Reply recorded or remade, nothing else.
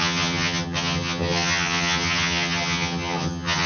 remade